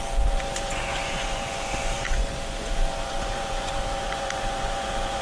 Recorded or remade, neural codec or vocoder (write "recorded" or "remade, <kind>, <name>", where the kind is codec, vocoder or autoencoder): remade, vocoder, Vocos